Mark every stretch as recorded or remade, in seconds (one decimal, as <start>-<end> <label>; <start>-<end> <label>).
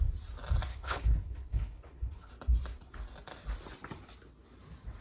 0.0-0.7 recorded; 0.7-2.3 remade; 2.3-5.0 recorded